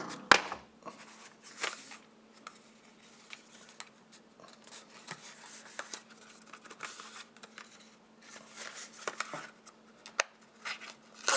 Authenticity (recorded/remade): recorded